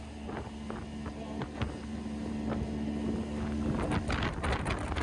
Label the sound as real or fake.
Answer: real